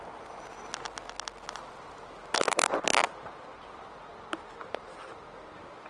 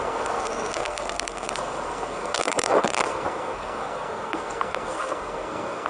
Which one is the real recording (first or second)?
first